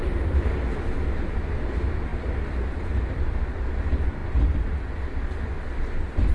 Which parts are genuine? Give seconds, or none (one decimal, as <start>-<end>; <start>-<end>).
0.0-6.3